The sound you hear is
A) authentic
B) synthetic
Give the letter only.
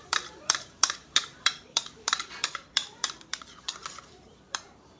B